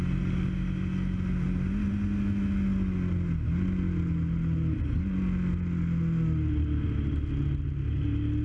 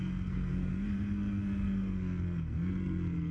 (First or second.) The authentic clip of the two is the first